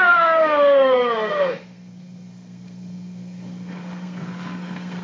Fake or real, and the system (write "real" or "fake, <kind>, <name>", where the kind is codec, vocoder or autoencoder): fake, codec, SNAC